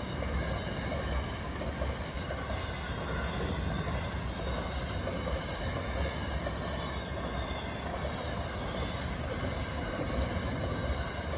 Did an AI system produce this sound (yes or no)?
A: no